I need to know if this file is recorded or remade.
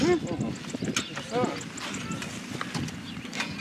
recorded